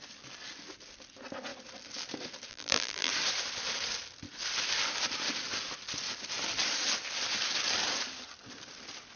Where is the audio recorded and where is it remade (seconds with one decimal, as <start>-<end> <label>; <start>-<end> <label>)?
0.0-2.5 recorded; 2.5-3.1 remade; 3.1-9.2 recorded